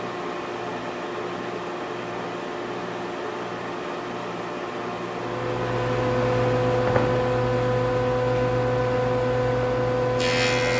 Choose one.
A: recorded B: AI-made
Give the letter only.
A